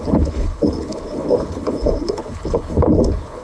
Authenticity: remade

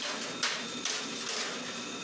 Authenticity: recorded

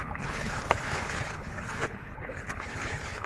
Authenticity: remade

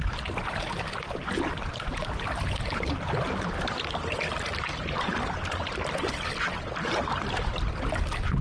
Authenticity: recorded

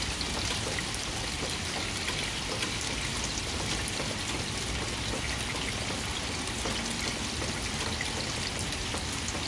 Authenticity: recorded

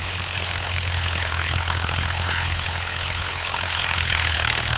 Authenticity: remade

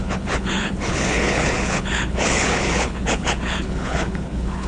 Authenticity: remade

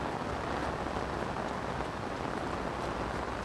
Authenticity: recorded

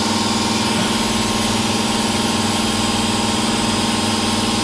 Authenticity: recorded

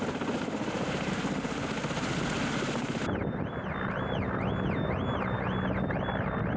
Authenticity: recorded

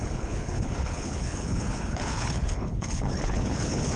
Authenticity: remade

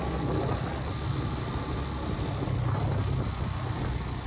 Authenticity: recorded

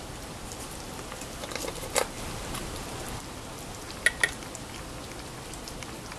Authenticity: recorded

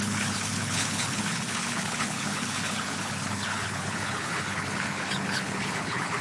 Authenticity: remade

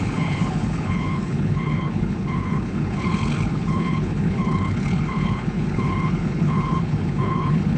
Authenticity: remade